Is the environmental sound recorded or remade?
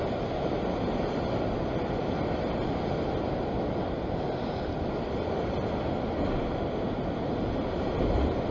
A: recorded